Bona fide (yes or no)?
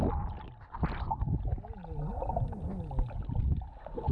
yes